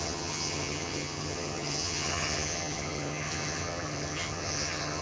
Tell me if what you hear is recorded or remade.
remade